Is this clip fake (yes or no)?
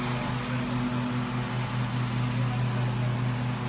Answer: no